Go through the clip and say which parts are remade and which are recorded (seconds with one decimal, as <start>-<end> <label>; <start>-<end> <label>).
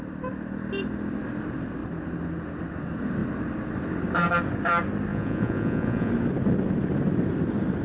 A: 0.0-5.1 recorded; 5.1-6.1 remade; 6.1-7.8 recorded